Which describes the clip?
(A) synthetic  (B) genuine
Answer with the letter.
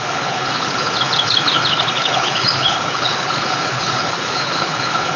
A